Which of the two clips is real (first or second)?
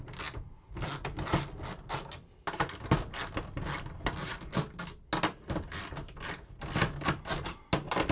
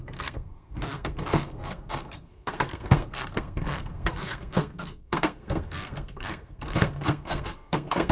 first